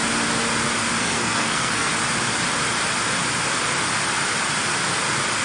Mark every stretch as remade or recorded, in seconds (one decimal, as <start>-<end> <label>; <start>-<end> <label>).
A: 0.0-1.0 recorded; 1.0-1.9 remade; 1.9-5.4 recorded